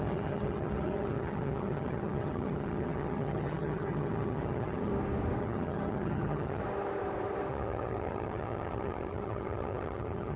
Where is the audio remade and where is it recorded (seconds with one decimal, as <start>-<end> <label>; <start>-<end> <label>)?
0.0-4.9 remade; 4.9-5.4 recorded; 5.4-6.6 remade; 6.6-7.5 recorded; 7.5-10.4 remade